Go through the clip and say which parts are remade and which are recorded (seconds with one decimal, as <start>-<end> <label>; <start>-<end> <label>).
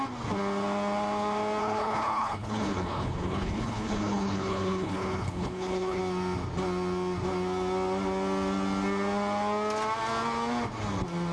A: 0.0-1.6 recorded; 1.6-6.0 remade; 6.0-11.3 recorded